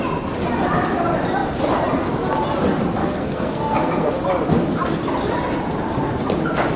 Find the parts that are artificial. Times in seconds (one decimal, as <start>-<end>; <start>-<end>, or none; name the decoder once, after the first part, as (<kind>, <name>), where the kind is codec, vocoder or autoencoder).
3.0-4.1 (codec, SNAC)